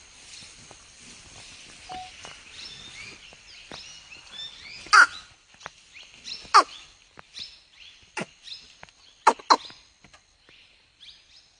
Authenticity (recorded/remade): recorded